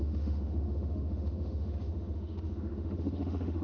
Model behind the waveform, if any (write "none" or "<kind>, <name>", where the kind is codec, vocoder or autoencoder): autoencoder, DAC-VAE